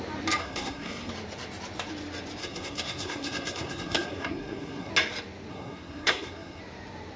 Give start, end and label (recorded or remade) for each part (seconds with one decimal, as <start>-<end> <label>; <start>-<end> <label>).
0.0-0.4 recorded; 0.4-1.1 remade; 1.1-2.4 recorded; 2.4-4.9 remade; 4.9-5.5 recorded; 5.5-6.6 remade; 6.6-7.2 recorded